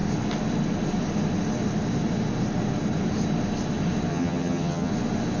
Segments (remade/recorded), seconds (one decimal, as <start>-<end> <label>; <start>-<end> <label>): 0.0-4.1 recorded; 4.1-4.9 remade; 4.9-5.4 recorded